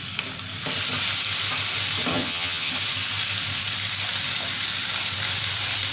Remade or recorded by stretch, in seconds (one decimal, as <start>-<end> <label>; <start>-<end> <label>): 0.0-2.1 recorded; 2.1-2.7 remade; 2.7-5.9 recorded